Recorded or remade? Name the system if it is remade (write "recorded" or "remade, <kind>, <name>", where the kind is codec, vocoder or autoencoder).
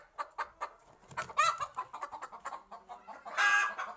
recorded